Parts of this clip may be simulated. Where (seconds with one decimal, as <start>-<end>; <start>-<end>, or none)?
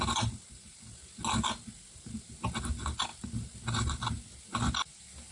none